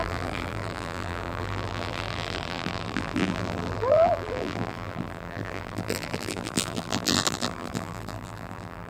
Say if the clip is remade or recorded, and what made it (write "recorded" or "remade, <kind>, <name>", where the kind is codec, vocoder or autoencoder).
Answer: remade, vocoder, BigVGAN v2